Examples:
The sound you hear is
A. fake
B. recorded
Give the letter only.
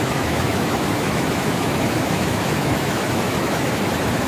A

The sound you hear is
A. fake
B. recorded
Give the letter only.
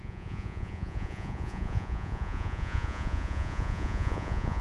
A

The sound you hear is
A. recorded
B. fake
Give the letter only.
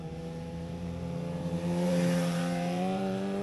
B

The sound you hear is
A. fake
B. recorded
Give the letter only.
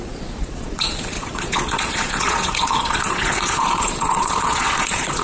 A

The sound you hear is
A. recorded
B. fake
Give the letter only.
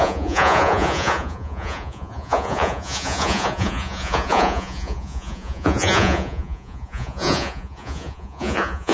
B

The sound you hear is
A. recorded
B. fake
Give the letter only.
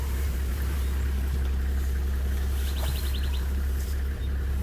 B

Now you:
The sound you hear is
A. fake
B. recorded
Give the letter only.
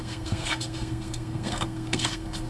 A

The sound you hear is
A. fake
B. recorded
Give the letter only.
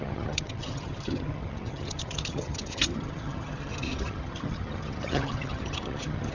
A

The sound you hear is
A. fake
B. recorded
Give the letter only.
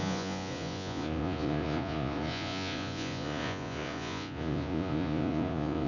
A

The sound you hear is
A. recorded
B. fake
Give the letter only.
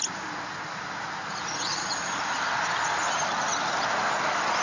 A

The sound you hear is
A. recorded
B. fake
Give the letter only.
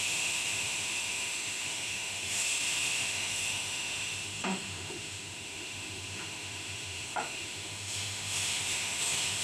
B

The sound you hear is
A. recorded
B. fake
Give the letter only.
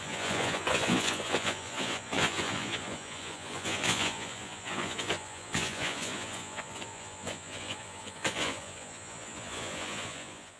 B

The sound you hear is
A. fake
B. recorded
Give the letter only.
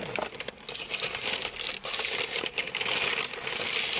B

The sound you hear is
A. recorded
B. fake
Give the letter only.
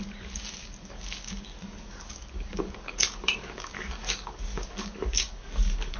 B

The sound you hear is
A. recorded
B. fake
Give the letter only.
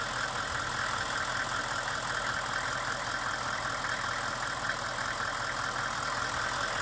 A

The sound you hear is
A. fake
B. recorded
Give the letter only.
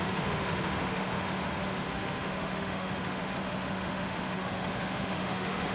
A